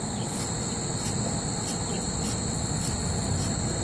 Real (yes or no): yes